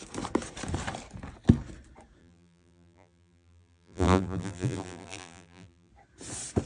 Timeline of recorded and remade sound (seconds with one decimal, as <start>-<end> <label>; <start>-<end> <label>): 0.0-2.2 recorded; 2.2-5.9 remade; 5.9-6.7 recorded